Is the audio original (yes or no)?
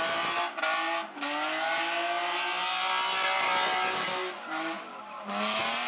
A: yes